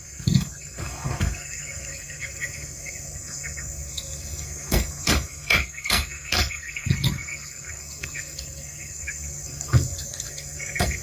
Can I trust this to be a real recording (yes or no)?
no